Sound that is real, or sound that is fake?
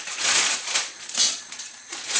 fake